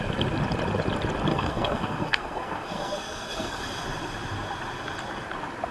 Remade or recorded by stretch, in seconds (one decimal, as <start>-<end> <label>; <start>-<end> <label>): 0.0-1.3 recorded; 1.3-3.6 remade; 3.6-5.7 recorded